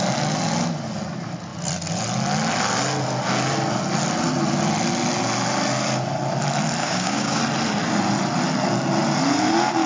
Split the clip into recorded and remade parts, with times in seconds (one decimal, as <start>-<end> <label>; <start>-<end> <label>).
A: 0.0-6.8 recorded; 6.8-7.4 remade; 7.4-9.9 recorded